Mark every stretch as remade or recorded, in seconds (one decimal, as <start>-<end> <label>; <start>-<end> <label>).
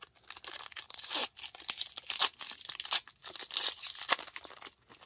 0.0-5.1 recorded